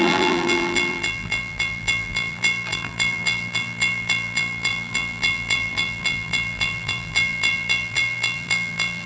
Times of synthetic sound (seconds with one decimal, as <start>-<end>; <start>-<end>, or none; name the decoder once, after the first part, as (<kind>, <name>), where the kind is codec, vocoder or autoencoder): 0.0-9.1 (vocoder, BigVGAN v2)